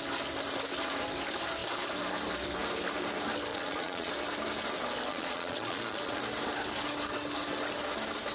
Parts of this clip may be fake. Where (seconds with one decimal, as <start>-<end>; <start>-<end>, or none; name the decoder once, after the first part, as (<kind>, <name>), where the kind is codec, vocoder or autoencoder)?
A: 3.5-4.1 (vocoder, Vocos); 5.1-6.2